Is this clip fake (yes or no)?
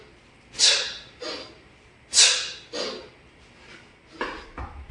no